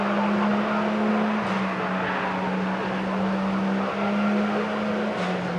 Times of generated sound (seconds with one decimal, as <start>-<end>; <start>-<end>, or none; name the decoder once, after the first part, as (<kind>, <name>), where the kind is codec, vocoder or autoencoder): none